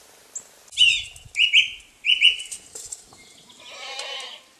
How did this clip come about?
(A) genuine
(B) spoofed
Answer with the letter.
A